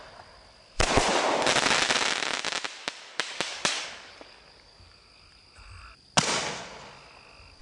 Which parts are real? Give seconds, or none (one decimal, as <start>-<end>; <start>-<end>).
0.0-2.8; 5.1-7.6